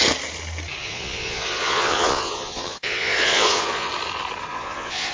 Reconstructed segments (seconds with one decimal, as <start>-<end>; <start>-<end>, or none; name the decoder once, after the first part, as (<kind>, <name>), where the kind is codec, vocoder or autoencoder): 0.8-3.9 (vocoder, Vocos); 4.5-5.1